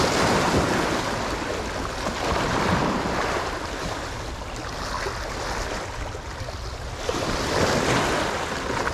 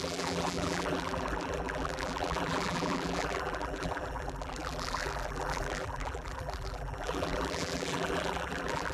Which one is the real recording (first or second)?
first